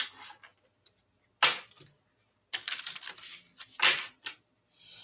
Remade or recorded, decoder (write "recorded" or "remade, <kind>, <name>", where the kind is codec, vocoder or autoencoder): recorded